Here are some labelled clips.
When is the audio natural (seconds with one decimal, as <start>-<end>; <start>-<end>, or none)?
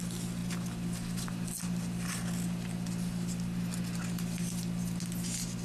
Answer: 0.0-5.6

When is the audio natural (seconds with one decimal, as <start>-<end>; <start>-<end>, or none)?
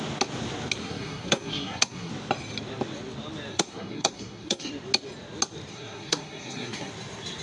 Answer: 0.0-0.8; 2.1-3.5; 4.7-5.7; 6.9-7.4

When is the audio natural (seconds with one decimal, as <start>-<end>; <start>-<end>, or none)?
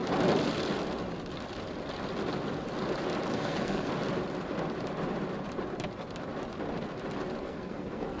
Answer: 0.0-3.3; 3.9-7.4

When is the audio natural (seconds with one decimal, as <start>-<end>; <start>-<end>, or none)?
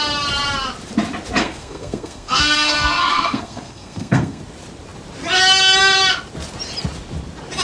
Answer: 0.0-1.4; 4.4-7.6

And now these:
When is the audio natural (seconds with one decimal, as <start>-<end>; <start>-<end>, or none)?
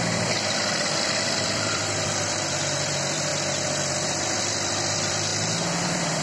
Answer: none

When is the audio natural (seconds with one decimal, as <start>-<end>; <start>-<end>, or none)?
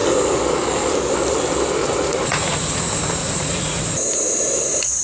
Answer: 0.0-1.8; 2.8-3.2; 3.8-5.0